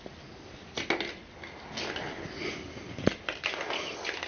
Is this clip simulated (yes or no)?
no